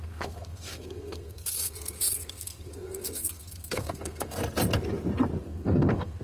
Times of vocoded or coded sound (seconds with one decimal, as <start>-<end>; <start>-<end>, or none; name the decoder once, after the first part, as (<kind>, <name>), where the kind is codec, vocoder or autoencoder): 0.0-4.4 (codec, SNAC); 5.4-6.2